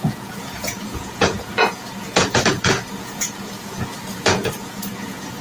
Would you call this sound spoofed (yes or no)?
yes